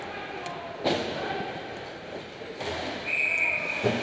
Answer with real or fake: real